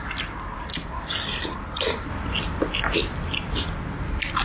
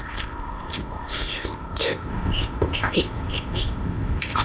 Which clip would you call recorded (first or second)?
first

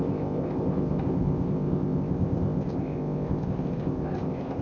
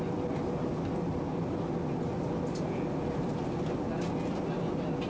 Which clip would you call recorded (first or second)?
second